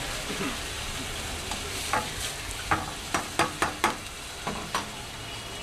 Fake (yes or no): no